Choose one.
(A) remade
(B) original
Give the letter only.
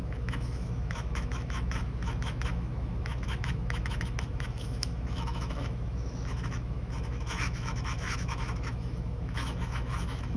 A